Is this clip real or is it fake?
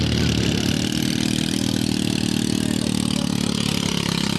real